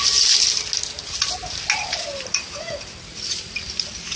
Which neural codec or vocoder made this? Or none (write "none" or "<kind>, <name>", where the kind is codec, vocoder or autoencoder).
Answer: none